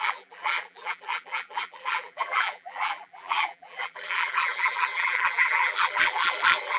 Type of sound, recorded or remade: remade